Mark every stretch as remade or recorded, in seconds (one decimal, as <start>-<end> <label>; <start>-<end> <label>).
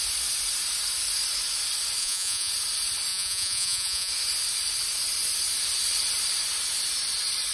0.0-2.0 recorded; 2.0-2.5 remade; 2.5-3.1 recorded; 3.1-4.1 remade; 4.1-7.5 recorded